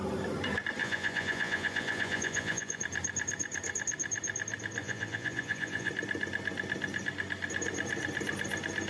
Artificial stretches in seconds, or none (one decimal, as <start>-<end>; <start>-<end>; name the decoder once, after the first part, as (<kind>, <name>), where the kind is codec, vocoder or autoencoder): 0.8-2.8 (vocoder, Vocos); 4.8-5.9